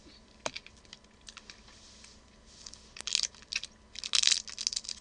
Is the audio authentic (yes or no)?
yes